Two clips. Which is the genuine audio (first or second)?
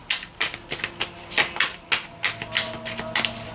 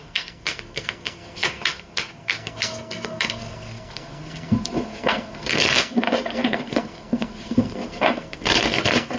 first